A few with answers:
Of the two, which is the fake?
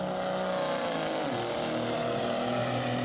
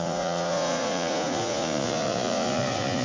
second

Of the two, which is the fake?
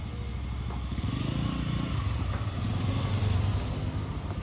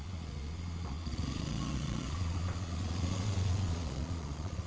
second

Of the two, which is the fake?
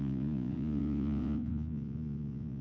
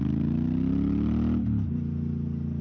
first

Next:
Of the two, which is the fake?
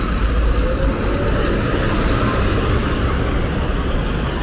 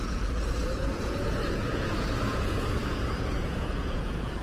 second